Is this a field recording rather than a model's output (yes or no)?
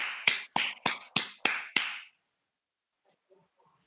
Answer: yes